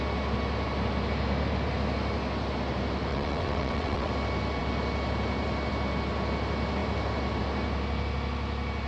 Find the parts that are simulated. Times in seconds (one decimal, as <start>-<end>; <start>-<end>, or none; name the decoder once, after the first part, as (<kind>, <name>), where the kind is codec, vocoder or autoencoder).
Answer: 3.1-4.1 (vocoder, WaveNeXt)